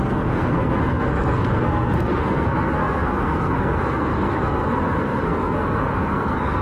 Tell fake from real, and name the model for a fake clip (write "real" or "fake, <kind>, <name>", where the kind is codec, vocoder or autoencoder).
fake, codec, SNAC